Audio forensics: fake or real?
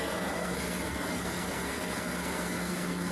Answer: fake